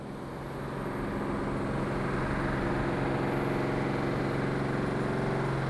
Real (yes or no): yes